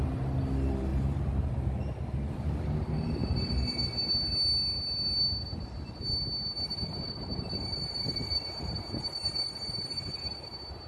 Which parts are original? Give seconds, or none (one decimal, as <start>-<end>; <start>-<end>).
0.0-0.9; 1.5-6.8; 10.5-10.9